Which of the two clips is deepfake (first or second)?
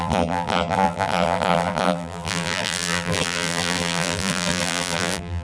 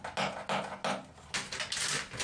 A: first